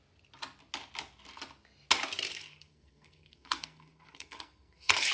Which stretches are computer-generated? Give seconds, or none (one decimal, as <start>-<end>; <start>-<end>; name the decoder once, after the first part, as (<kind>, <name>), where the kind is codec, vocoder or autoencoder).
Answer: 2.3-5.1 (codec, SNAC)